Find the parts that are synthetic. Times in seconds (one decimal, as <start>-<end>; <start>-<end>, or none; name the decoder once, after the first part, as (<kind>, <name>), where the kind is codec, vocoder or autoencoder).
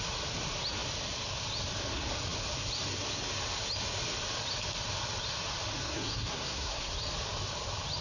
5.8-6.9 (codec, SNAC)